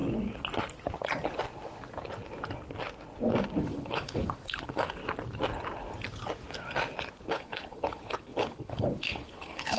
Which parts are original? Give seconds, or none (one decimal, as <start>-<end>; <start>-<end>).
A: 0.0-3.6; 5.0-7.3